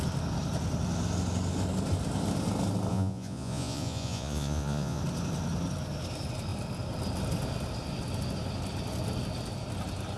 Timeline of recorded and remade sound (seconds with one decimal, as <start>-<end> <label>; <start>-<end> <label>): 0.0-2.9 recorded; 2.9-5.0 remade; 5.0-10.2 recorded